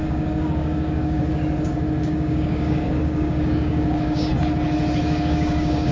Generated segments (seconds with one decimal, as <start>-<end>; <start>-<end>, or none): 0.0-4.3; 5.0-5.9